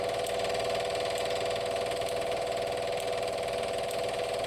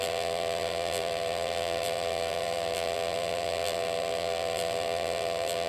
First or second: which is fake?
second